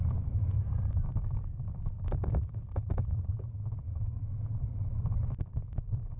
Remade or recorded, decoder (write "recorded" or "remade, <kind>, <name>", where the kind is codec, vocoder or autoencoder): recorded